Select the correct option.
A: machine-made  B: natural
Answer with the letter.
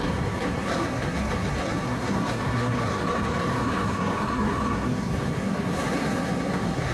A